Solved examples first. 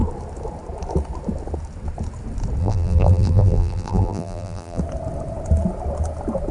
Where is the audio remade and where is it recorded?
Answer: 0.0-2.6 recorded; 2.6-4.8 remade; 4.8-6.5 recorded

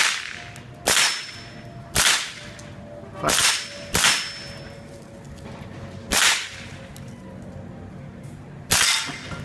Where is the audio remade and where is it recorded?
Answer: 0.0-9.4 recorded

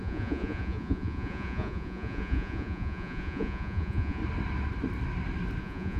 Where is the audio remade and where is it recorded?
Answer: 0.0-4.2 remade; 4.2-5.6 recorded; 5.6-6.0 remade

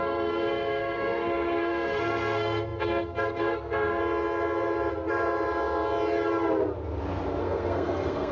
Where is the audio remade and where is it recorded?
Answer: 0.0-4.0 remade; 4.0-7.4 recorded; 7.4-8.3 remade

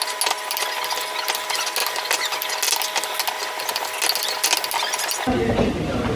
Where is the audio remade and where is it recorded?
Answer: 0.0-6.2 recorded

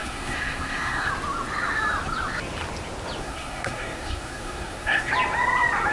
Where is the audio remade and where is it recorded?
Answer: 0.0-1.1 remade; 1.1-3.2 recorded; 3.2-5.1 remade; 5.1-5.9 recorded

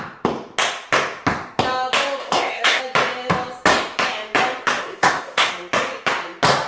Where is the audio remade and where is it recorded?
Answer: 0.0-2.2 recorded; 2.2-2.8 remade; 2.8-4.8 recorded; 4.8-5.5 remade; 5.5-6.7 recorded